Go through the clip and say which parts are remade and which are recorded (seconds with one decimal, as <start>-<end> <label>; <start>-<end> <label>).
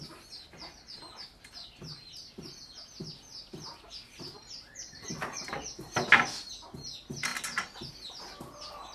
0.0-8.9 recorded